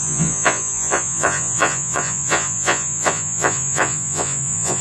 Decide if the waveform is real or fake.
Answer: fake